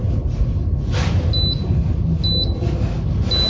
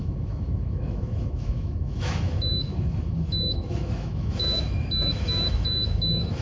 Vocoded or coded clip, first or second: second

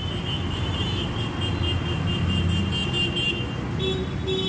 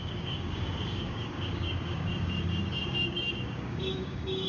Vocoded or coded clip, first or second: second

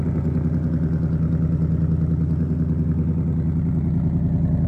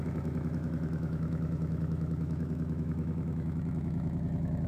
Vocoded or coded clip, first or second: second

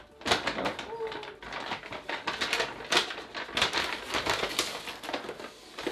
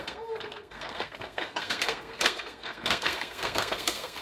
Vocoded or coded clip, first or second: second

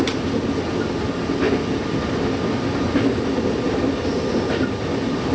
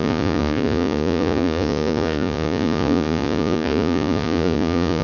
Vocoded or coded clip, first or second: second